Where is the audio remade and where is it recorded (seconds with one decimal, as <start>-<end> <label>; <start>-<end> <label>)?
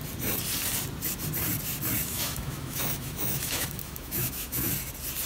0.0-2.0 recorded; 2.0-4.7 remade; 4.7-5.3 recorded